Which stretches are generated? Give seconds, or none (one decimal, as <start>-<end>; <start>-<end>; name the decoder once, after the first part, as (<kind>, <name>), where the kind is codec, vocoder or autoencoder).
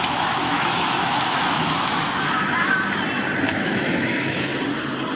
0.0-2.0 (autoencoder, DAC-VAE); 3.4-4.5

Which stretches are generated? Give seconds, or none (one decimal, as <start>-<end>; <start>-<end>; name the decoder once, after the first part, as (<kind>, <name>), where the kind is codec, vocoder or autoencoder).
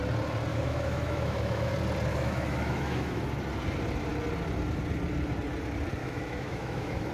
0.5-1.7 (autoencoder, DAC-VAE); 2.1-3.2; 6.0-7.1